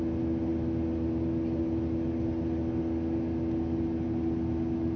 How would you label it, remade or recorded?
recorded